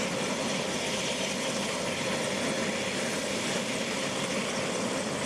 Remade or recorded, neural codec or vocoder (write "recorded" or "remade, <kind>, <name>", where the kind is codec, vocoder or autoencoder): recorded